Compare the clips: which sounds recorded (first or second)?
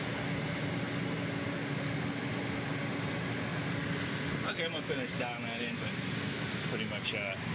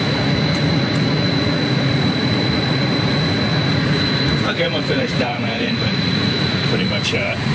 first